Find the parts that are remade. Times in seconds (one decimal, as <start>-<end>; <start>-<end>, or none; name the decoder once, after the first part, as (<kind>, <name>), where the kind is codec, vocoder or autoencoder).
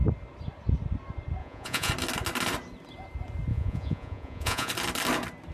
1.4-1.9 (vocoder, Vocos); 3.5-4.7